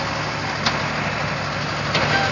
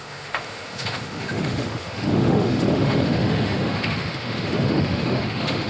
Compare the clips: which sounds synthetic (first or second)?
second